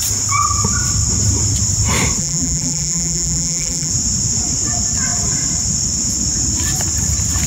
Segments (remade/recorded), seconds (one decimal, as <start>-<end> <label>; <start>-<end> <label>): 0.0-2.2 recorded; 2.2-3.9 remade; 3.9-7.5 recorded